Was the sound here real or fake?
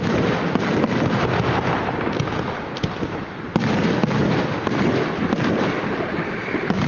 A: fake